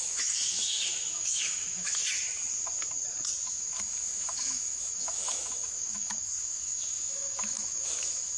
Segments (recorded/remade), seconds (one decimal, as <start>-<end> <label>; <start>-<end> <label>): 0.0-2.0 remade; 2.0-3.5 recorded; 3.5-8.4 remade